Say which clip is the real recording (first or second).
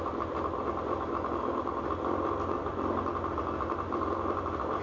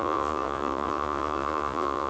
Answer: first